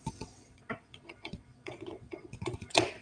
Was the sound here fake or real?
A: fake